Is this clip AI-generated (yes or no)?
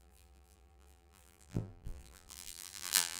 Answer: yes